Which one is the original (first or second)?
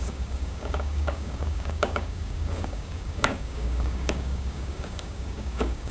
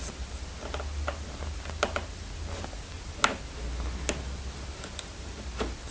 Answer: second